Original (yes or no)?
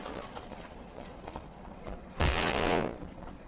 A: no